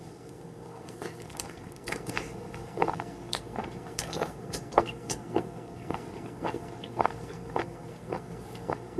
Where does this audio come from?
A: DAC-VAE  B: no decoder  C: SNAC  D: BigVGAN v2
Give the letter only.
C